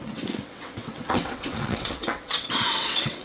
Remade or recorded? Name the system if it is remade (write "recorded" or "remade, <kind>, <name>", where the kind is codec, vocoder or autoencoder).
remade, vocoder, WaveNeXt